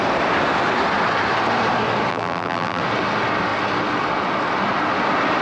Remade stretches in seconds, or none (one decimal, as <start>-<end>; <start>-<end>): 2.1-2.8